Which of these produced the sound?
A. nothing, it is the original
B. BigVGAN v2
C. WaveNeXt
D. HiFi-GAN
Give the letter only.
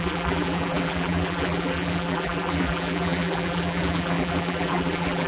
B